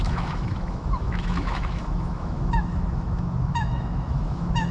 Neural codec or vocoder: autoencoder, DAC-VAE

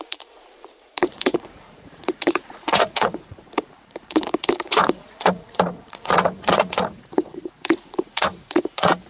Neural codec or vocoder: vocoder, Vocos